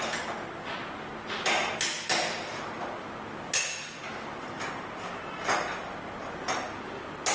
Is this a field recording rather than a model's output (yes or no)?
yes